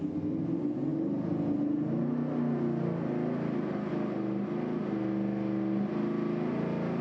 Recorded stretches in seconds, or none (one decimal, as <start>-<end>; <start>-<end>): 0.0-7.0